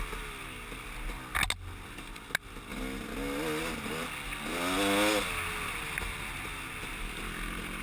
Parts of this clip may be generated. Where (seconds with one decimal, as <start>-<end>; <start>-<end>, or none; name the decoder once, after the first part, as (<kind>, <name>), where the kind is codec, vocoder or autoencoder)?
none